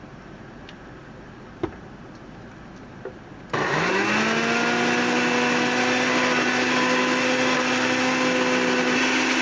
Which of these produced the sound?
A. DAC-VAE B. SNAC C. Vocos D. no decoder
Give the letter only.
D